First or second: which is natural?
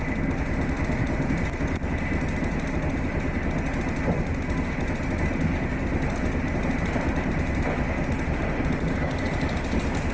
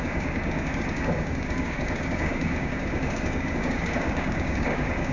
first